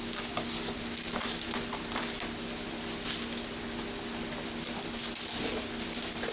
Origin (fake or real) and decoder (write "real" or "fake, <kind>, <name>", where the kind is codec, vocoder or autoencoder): real